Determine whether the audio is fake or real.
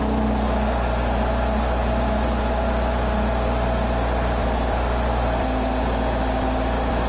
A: real